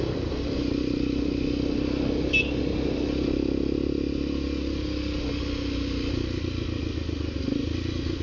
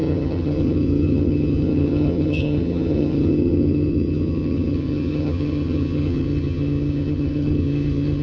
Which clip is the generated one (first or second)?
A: second